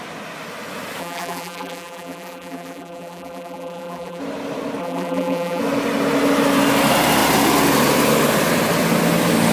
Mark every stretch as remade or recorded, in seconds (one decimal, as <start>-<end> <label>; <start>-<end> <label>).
0.0-1.0 recorded; 1.0-4.2 remade; 4.2-4.8 recorded; 4.8-5.6 remade; 5.6-9.5 recorded